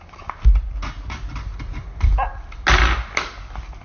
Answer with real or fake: real